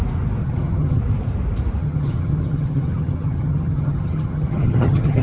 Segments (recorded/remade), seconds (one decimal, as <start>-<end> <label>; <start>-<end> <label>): 0.0-0.4 recorded; 0.4-1.0 remade; 1.0-1.8 recorded; 1.8-5.2 remade